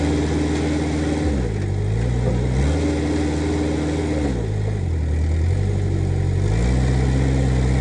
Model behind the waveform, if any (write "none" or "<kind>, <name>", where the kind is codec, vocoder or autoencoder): none